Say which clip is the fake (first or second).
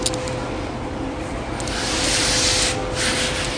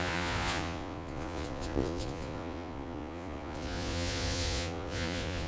second